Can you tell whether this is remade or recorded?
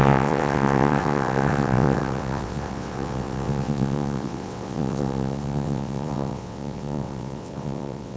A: remade